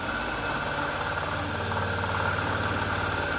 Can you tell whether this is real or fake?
real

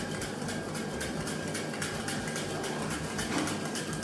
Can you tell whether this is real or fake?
real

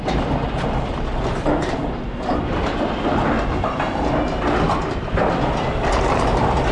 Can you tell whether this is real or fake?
real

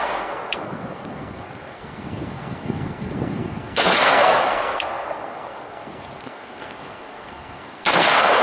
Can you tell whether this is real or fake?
fake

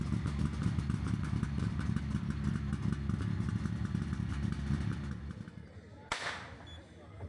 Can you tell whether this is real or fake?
real